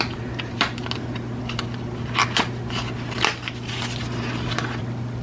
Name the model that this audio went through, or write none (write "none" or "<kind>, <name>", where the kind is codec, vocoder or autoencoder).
none